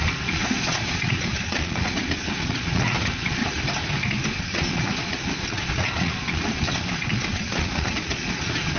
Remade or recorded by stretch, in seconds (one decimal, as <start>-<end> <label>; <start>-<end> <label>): 0.0-3.4 remade; 3.4-4.4 recorded; 4.4-8.8 remade